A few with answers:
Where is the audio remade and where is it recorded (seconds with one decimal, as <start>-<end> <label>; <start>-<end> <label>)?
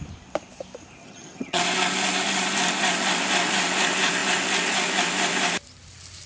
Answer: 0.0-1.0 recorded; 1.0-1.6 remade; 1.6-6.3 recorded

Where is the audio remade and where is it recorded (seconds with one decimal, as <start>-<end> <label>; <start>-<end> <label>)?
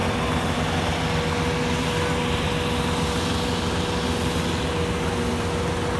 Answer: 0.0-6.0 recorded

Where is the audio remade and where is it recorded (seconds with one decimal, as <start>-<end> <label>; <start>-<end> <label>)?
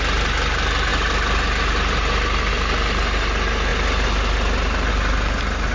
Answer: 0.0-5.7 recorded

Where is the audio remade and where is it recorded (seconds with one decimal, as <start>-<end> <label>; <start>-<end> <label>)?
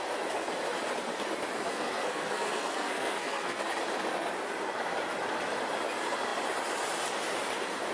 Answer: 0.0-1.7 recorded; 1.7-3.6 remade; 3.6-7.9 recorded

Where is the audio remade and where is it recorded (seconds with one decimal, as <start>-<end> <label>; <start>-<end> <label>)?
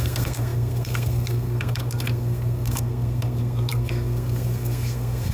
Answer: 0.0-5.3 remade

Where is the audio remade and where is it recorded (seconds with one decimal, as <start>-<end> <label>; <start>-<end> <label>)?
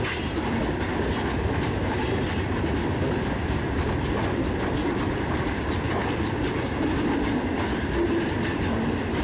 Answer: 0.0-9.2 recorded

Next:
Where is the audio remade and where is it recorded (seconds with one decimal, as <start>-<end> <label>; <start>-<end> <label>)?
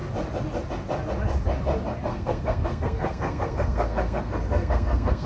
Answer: 0.0-2.1 recorded; 2.1-5.3 remade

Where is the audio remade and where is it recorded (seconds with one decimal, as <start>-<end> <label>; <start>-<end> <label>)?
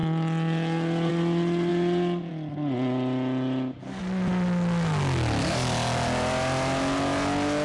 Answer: 0.0-7.6 recorded